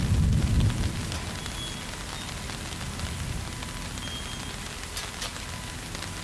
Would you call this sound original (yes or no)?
yes